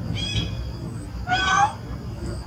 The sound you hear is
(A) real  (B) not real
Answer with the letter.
A